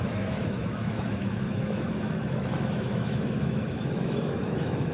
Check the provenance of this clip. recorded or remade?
remade